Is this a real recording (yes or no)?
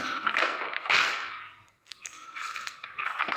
no